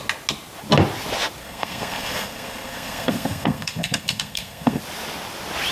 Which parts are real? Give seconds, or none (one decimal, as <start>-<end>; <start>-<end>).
0.0-1.4; 4.8-5.7